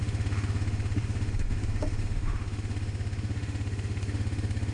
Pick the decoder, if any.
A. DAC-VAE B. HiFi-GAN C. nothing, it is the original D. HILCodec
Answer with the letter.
A